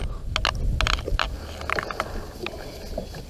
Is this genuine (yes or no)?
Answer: yes